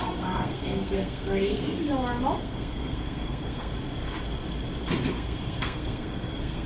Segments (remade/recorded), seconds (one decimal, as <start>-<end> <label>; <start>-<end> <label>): 0.0-1.9 remade; 1.9-2.4 recorded; 2.4-3.7 remade; 3.7-5.1 recorded; 5.1-6.7 remade